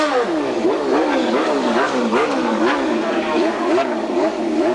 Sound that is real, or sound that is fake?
fake